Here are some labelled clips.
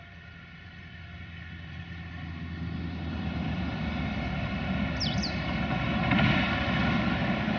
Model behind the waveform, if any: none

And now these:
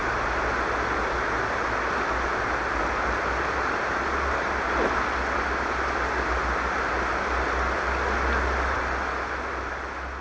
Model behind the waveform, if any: none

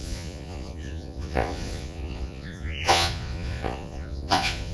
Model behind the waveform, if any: vocoder, Vocos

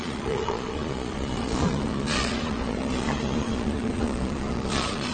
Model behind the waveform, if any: vocoder, Vocos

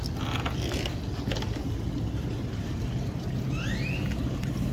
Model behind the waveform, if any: none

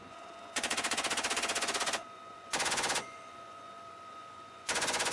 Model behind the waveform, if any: vocoder, Vocos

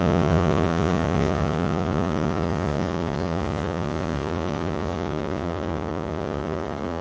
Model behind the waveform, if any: vocoder, Vocos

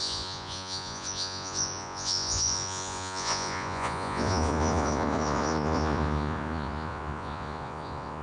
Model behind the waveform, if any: vocoder, Vocos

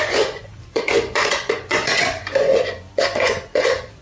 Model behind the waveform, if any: vocoder, Vocos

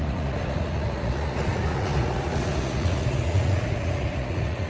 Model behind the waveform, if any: vocoder, Vocos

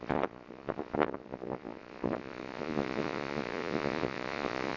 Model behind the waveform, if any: vocoder, Vocos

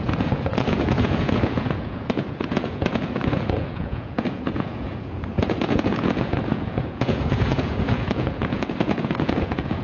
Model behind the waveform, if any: vocoder, Vocos